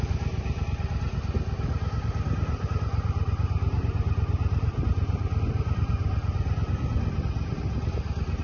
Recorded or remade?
recorded